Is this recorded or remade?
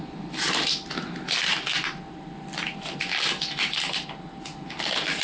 recorded